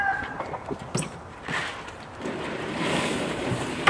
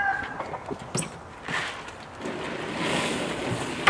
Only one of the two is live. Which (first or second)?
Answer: second